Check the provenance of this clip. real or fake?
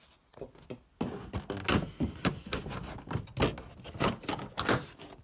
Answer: real